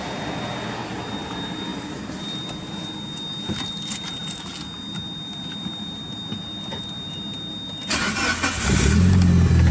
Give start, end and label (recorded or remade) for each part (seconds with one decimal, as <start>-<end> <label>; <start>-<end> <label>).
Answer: 0.0-9.7 recorded